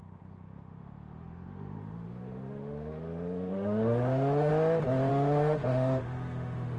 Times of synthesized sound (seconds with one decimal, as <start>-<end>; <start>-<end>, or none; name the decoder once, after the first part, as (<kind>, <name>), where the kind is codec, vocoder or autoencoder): 0.0-4.5 (autoencoder, DAC-VAE); 5.1-6.8